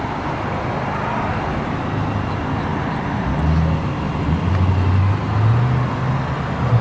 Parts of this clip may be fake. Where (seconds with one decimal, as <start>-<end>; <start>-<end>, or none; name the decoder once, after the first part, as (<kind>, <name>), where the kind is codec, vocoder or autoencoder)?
none